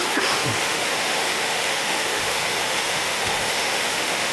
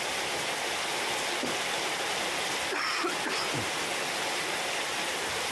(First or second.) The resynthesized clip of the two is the first